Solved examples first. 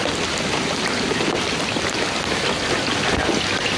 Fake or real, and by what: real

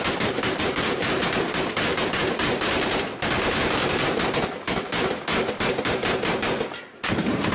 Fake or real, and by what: fake, vocoder, BigVGAN v2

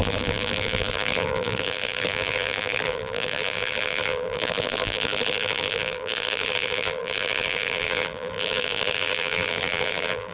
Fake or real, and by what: fake, vocoder, BigVGAN v2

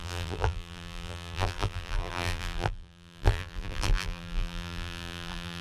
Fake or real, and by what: fake, vocoder, BigVGAN v2